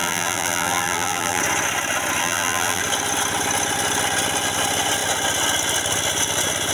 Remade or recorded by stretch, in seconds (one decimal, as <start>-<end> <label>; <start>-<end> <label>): 0.0-1.4 remade; 1.4-2.2 recorded; 2.2-2.8 remade; 2.8-6.7 recorded